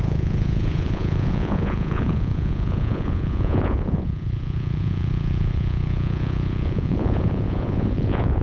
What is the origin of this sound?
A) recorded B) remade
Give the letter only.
B